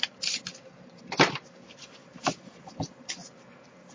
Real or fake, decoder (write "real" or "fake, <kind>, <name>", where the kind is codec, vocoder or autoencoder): real